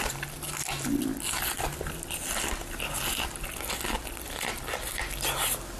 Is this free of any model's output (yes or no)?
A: yes